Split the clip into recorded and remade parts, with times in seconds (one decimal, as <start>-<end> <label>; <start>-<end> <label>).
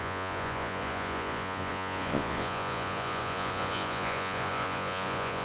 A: 0.0-5.4 remade